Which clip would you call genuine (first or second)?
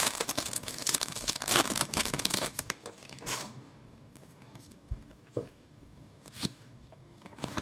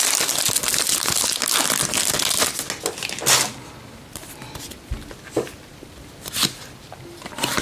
second